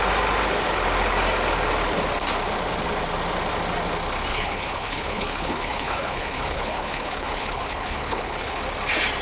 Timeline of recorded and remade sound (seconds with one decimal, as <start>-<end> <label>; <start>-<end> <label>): 0.0-4.3 recorded; 4.3-8.6 remade; 8.6-9.2 recorded